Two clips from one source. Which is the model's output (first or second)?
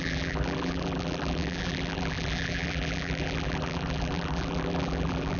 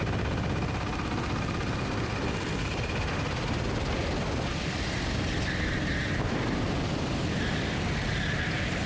first